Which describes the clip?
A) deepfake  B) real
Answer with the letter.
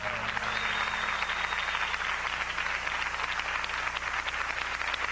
B